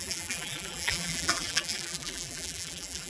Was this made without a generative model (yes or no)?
no